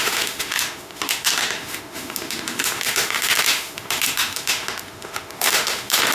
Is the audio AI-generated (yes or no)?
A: yes